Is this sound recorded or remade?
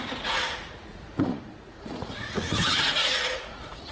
remade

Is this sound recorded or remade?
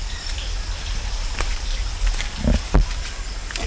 recorded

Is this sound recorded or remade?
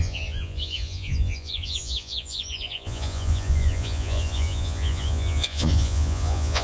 remade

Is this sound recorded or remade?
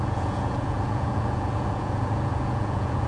remade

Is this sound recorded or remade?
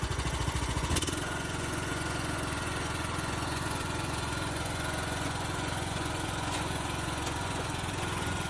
remade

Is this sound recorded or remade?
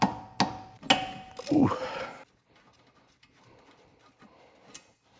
recorded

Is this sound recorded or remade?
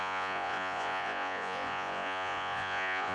remade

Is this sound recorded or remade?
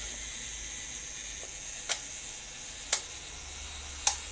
recorded